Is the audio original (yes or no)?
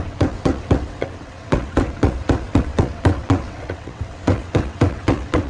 no